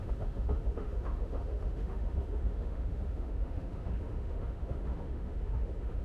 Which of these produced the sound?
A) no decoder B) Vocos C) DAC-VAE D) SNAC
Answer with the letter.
C